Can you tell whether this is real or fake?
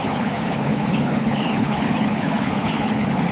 fake